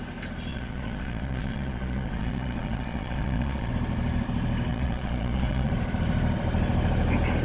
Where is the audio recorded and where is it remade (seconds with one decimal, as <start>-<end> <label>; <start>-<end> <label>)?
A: 0.0-0.5 recorded; 0.5-3.7 remade; 3.7-4.7 recorded; 4.7-5.7 remade; 5.7-7.4 recorded